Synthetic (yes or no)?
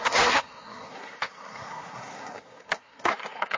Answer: yes